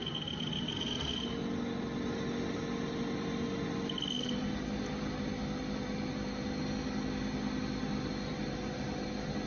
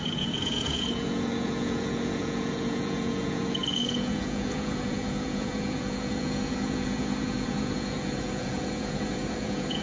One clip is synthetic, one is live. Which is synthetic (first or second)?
second